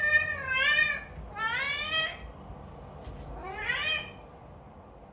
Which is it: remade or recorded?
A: recorded